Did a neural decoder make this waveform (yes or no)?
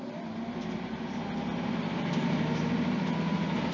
no